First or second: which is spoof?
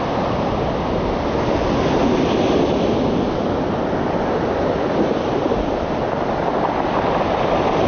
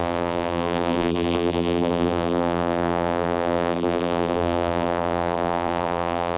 second